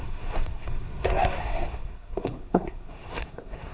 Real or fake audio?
fake